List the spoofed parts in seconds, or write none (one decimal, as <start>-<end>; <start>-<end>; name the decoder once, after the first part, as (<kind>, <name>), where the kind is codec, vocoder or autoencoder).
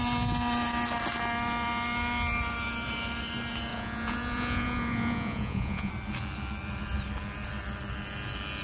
3.7-5.9 (vocoder, Vocos)